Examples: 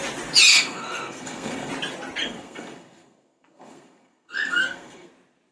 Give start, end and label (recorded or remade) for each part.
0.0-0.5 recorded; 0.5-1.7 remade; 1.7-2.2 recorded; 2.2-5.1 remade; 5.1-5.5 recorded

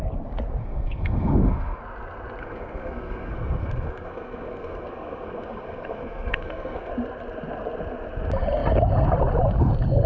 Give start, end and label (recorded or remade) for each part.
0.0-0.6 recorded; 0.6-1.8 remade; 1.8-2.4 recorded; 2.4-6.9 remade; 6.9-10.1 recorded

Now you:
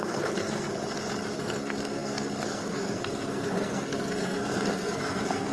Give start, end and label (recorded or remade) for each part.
0.0-0.7 remade; 0.7-1.4 recorded; 1.4-5.5 remade

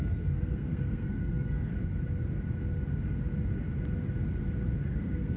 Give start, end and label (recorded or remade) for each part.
0.0-1.7 remade; 1.7-4.9 recorded; 4.9-5.4 remade

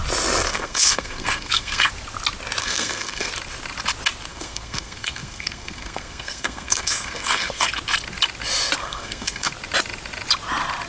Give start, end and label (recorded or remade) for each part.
0.0-0.5 recorded; 0.5-1.9 remade; 1.9-2.6 recorded; 2.6-3.3 remade; 3.3-4.3 recorded; 4.3-7.7 remade; 7.7-8.8 recorded; 8.8-9.5 remade; 9.5-10.9 recorded

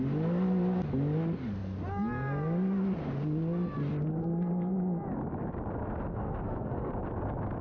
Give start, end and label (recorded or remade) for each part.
0.0-6.1 recorded; 6.1-6.9 remade; 6.9-7.6 recorded